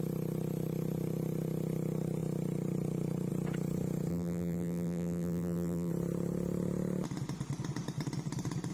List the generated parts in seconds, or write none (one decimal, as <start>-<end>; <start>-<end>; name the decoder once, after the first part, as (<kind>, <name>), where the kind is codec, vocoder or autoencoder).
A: 4.1-5.9 (vocoder, BigVGAN v2)